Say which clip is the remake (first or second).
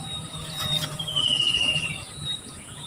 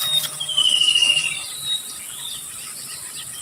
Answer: first